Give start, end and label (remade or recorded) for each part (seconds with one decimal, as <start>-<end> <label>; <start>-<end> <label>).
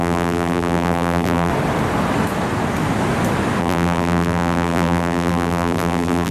0.0-1.5 remade; 1.5-3.6 recorded; 3.6-6.3 remade